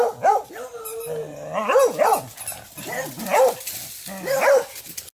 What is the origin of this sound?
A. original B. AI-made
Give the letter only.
A